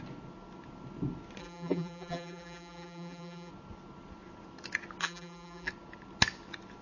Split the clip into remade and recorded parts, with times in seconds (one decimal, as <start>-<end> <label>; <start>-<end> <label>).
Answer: 0.0-1.4 recorded; 1.4-3.5 remade; 3.5-5.0 recorded; 5.0-5.7 remade; 5.7-6.8 recorded